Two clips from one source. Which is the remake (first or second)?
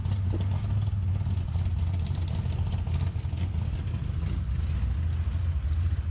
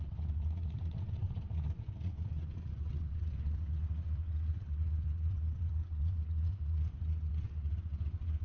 second